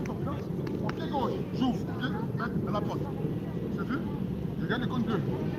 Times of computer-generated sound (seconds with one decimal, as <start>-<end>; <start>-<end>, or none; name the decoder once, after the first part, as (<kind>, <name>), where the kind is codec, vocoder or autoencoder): none